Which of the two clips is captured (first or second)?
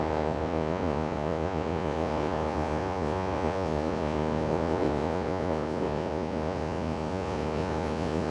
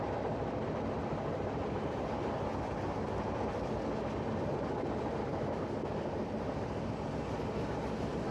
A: second